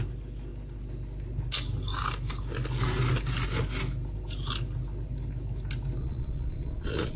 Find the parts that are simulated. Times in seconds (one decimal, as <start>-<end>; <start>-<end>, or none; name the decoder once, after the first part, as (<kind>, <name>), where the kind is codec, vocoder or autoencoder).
6.0-7.2 (vocoder, Vocos)